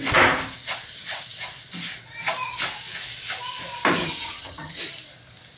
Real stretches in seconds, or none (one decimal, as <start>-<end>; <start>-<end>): 0.0-4.0; 4.8-5.6